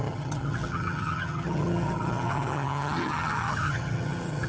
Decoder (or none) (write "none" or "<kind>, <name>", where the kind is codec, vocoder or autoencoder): vocoder, HiFi-GAN